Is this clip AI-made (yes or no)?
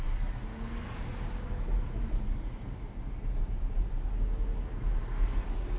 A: no